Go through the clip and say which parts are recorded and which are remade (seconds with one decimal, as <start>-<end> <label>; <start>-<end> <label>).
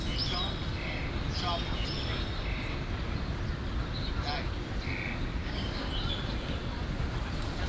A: 0.0-5.4 recorded; 5.4-5.9 remade; 5.9-7.7 recorded